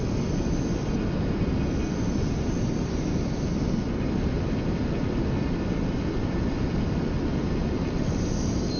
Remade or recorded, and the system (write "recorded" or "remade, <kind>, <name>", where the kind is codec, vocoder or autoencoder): recorded